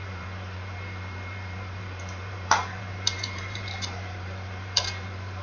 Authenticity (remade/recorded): remade